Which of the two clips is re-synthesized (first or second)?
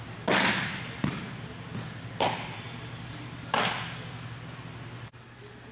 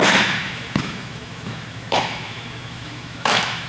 second